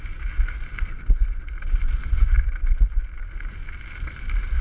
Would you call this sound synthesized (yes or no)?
no